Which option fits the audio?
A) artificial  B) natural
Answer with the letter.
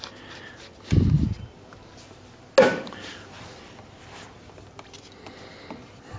B